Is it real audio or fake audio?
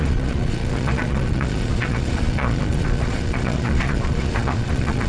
fake